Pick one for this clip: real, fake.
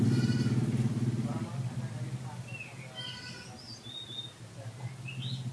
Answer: real